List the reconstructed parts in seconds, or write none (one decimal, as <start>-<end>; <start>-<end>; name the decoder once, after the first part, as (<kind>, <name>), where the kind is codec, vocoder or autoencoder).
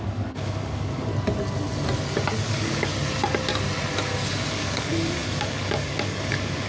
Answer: 0.0-1.1 (codec, DAC); 2.4-2.9; 4.5-6.7